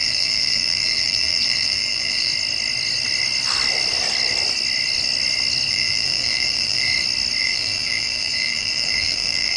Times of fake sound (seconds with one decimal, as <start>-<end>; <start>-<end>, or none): 0.0-2.3; 5.7-6.9; 7.4-9.6